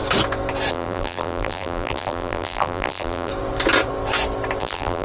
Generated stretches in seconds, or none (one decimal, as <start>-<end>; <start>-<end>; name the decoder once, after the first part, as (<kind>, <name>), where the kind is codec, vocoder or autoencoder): 0.7-3.3 (vocoder, BigVGAN v2); 4.6-5.0